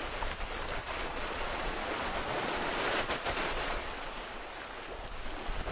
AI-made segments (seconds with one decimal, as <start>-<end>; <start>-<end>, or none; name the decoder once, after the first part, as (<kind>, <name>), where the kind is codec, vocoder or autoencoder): 0.8-4.2 (vocoder, Vocos)